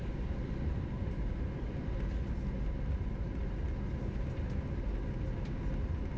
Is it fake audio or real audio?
real